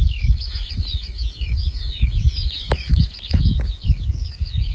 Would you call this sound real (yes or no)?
no